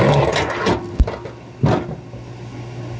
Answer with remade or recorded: recorded